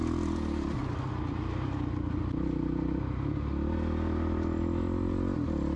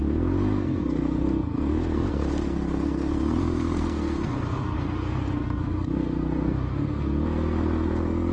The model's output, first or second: second